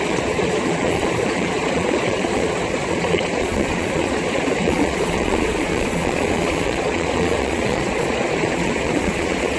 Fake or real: fake